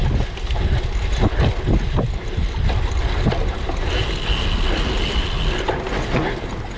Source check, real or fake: real